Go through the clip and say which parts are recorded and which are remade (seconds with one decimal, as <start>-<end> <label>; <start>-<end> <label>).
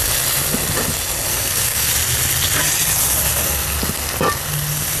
0.0-1.3 recorded; 1.3-1.9 remade; 1.9-3.3 recorded; 3.3-3.8 remade; 3.8-5.0 recorded